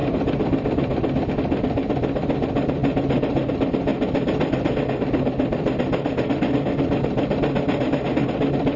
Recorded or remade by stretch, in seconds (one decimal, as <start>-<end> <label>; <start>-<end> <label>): 0.0-8.8 recorded